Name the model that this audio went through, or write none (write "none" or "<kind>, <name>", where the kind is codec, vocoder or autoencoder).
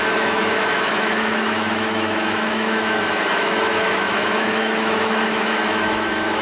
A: autoencoder, DAC-VAE